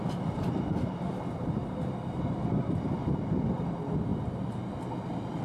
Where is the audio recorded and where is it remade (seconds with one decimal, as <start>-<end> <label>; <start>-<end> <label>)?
0.0-5.4 recorded